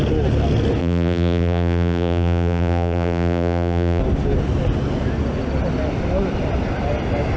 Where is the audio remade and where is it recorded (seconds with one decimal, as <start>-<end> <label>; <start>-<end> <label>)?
0.0-0.8 recorded; 0.8-4.0 remade; 4.0-7.4 recorded